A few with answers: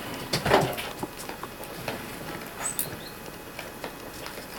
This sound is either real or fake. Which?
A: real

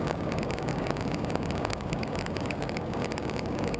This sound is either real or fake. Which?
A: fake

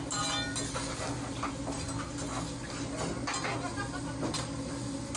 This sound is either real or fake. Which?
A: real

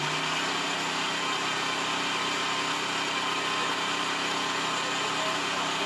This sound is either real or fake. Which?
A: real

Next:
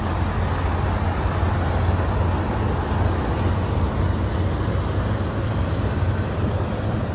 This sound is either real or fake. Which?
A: real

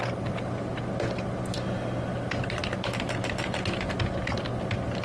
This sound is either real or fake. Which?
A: real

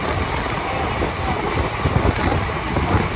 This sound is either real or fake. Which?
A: real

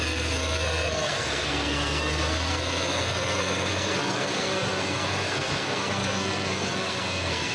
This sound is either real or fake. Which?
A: fake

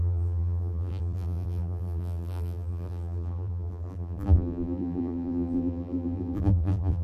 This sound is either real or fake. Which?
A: fake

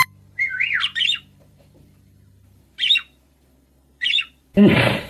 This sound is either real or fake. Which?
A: fake